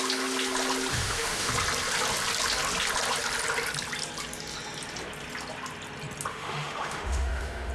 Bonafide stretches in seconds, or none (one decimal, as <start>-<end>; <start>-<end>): 0.0-0.9; 1.5-6.3